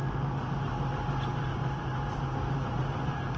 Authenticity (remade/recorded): remade